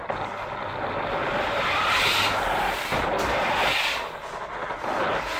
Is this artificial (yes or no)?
no